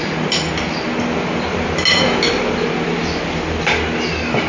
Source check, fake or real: real